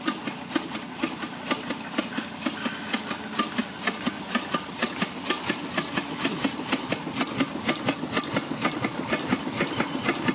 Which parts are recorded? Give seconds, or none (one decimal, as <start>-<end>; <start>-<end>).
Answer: 0.0-10.3